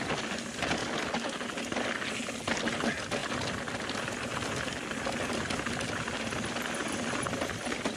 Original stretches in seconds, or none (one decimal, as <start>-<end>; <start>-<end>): 0.0-8.0